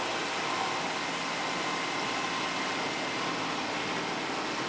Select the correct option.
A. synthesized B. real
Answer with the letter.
B